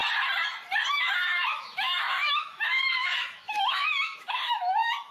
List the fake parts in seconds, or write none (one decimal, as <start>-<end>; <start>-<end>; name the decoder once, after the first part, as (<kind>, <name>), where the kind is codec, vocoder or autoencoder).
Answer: 0.9-5.1 (autoencoder, DAC-VAE)